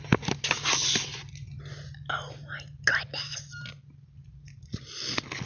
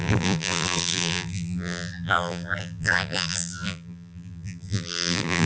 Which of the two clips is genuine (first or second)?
first